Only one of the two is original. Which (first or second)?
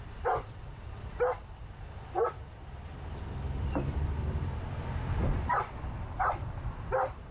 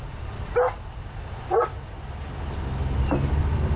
second